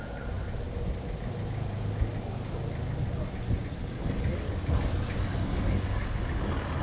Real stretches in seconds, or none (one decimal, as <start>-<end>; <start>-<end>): 0.0-3.8; 4.5-5.4